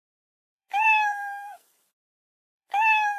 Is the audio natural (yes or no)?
no